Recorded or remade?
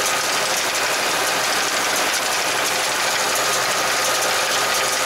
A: recorded